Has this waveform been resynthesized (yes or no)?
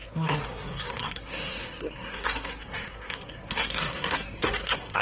yes